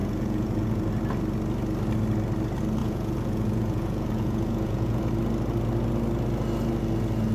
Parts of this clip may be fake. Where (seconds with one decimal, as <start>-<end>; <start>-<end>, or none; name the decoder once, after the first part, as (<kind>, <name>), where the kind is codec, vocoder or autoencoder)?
0.0-0.9 (vocoder, Vocos); 2.8-5.0